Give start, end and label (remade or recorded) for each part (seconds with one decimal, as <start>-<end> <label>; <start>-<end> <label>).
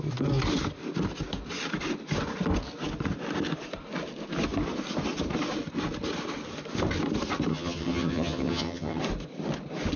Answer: 0.0-7.5 recorded; 7.5-9.0 remade; 9.0-10.0 recorded